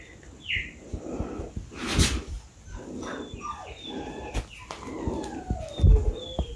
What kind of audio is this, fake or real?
real